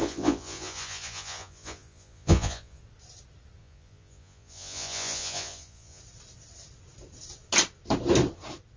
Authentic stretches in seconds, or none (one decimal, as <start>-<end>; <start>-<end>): 2.8-3.6; 6.0-8.8